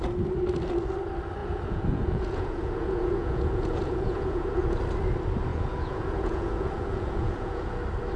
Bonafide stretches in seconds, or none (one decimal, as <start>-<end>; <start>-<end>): 0.0-1.4; 4.8-5.5; 7.7-8.2